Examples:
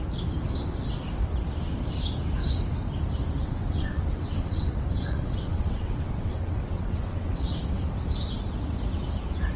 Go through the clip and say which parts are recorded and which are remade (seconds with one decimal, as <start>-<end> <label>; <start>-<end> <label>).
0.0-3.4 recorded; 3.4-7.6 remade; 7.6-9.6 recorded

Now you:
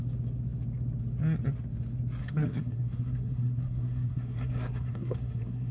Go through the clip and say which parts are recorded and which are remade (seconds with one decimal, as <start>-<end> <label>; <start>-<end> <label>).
0.0-2.2 recorded; 2.2-5.7 remade

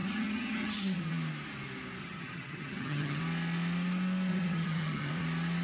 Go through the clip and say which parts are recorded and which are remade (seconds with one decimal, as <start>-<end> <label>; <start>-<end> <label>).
0.0-1.1 remade; 1.1-2.0 recorded; 2.0-3.2 remade; 3.2-4.3 recorded; 4.3-5.1 remade; 5.1-5.6 recorded

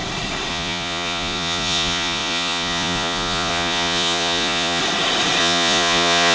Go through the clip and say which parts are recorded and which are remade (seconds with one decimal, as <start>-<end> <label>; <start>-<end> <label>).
0.0-0.5 recorded; 0.5-4.8 remade; 4.8-5.4 recorded; 5.4-6.3 remade

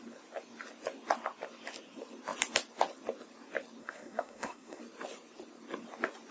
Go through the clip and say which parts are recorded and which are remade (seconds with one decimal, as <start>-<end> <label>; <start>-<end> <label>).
0.0-3.8 recorded; 3.8-4.8 remade; 4.8-6.3 recorded